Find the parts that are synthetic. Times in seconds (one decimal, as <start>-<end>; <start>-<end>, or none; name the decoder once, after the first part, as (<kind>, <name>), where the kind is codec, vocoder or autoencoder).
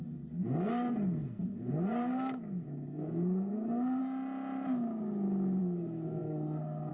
0.0-4.0 (codec, SNAC); 5.6-6.9